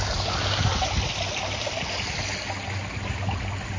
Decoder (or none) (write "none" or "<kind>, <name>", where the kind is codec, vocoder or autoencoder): none